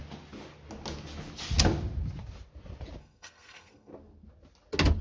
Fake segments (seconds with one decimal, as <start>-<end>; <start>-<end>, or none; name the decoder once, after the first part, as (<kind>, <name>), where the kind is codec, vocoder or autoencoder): 3.0-3.9 (codec, SNAC)

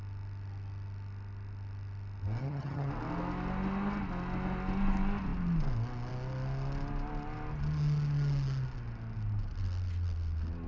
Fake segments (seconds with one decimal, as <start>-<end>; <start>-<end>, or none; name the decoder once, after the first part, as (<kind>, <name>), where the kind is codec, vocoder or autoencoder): 2.4-2.9 (vocoder, HiFi-GAN)

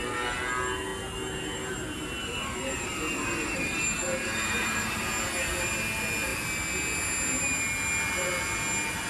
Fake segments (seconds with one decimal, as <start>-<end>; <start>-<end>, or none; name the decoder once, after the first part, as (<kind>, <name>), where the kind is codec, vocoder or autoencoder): 2.2-5.1 (vocoder, BigVGAN v2)

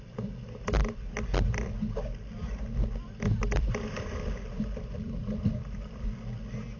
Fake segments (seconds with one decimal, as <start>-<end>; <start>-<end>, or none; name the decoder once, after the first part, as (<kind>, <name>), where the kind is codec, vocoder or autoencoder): none

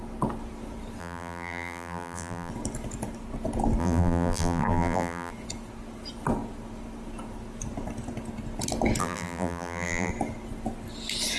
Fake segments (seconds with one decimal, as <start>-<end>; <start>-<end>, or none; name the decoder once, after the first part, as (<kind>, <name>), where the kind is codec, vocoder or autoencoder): 1.0-2.5 (vocoder, BigVGAN v2); 3.8-5.3; 9.0-10.1

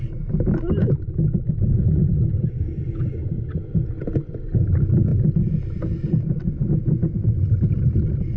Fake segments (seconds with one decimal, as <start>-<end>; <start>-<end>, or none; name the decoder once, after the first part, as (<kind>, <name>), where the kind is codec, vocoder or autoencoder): 0.8-2.0 (autoencoder, DAC-VAE)